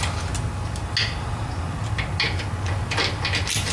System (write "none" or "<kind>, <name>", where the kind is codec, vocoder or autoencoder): none